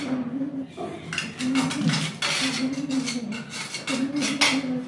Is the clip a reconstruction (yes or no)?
no